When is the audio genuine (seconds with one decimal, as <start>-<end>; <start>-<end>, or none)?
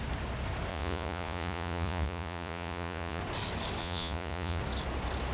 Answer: 0.0-0.7; 3.2-3.8; 4.6-5.3